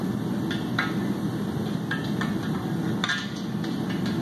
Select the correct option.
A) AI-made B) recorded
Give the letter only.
B